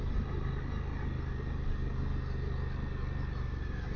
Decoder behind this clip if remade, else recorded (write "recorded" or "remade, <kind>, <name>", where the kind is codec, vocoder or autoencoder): recorded